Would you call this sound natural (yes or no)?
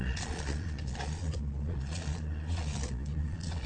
no